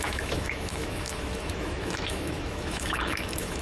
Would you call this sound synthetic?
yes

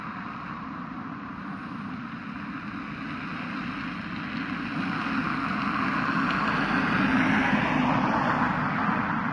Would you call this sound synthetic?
no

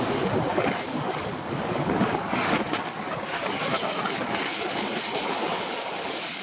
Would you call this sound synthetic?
yes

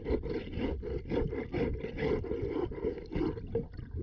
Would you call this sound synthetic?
no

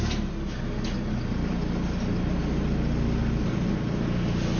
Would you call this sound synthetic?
no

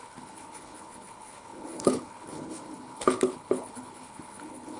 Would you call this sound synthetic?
yes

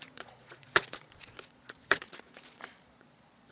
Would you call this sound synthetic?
yes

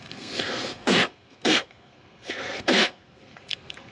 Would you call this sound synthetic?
yes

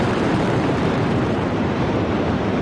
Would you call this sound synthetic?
yes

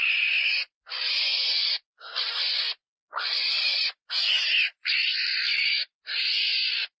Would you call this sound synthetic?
no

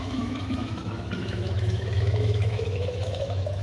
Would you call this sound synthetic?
yes